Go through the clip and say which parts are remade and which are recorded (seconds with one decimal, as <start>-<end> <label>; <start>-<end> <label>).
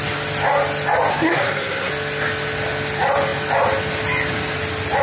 0.0-1.1 recorded; 1.1-1.9 remade; 1.9-5.0 recorded